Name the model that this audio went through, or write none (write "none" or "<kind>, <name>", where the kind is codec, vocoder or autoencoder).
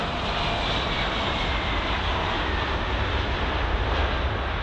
none